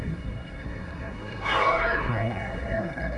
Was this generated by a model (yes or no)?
yes